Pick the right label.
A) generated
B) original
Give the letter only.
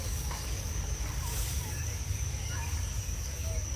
A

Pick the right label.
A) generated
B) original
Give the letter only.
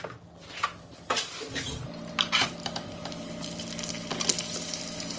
B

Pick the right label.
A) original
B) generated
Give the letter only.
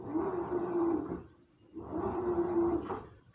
B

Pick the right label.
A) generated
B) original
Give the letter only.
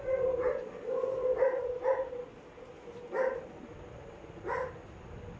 B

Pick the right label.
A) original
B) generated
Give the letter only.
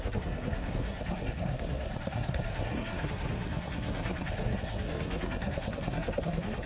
B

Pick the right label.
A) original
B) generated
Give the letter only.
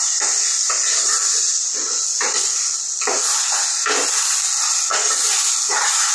A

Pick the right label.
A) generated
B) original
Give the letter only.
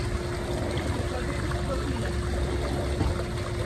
B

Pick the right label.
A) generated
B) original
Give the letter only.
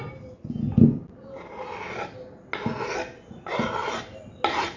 B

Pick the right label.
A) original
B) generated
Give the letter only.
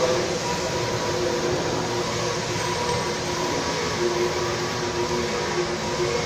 A